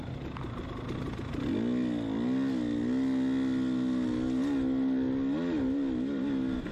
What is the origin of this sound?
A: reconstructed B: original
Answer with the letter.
B